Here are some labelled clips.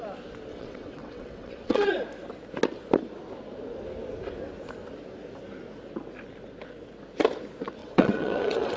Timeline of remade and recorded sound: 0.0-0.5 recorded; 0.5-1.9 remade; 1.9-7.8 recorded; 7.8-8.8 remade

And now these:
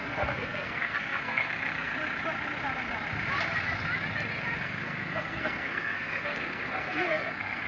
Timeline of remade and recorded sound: 0.0-1.9 remade; 1.9-4.6 recorded; 4.6-7.7 remade

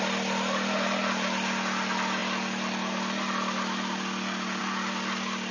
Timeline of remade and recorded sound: 0.0-5.5 recorded

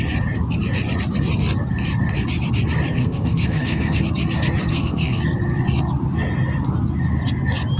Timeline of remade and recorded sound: 0.0-3.0 recorded; 3.0-4.0 remade; 4.0-4.7 recorded; 4.7-5.2 remade; 5.2-7.8 recorded

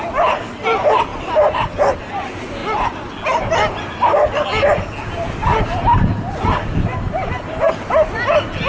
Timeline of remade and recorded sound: 0.0-8.7 recorded

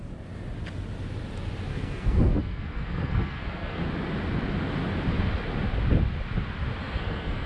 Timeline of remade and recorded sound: 0.0-1.7 recorded; 1.7-3.8 remade; 3.8-6.8 recorded; 6.8-7.5 remade